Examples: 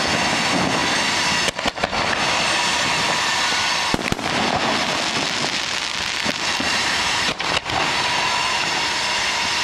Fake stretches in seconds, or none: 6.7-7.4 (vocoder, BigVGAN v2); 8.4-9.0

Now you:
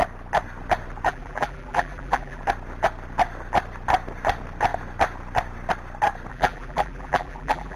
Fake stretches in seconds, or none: 1.1-2.4 (vocoder, BigVGAN v2); 6.3-7.8

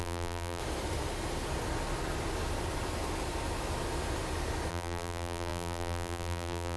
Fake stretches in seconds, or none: 0.0-0.6 (vocoder, BigVGAN v2); 4.7-6.8

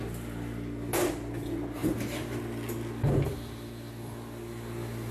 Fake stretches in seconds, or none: 1.8-2.4 (vocoder, BigVGAN v2)

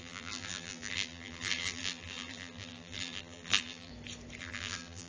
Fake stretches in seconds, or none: 0.0-3.9 (vocoder, BigVGAN v2); 4.4-5.1

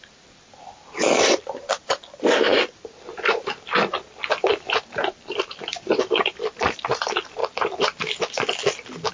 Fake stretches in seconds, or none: 0.0-7.4 (vocoder, BigVGAN v2)